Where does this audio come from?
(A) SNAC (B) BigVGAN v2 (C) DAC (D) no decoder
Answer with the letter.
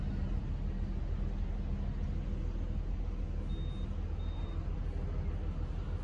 D